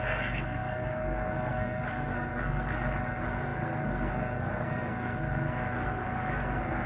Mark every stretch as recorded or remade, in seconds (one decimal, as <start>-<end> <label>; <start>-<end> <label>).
0.0-6.9 remade

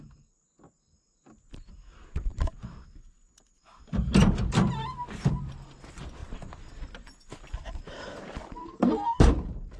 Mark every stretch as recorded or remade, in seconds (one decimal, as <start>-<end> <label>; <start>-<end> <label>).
0.0-8.6 recorded; 8.6-9.3 remade; 9.3-9.8 recorded

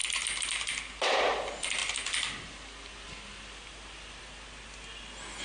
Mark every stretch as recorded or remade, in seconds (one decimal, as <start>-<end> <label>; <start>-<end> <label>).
0.0-0.7 remade; 0.7-1.8 recorded; 1.8-4.2 remade; 4.2-5.4 recorded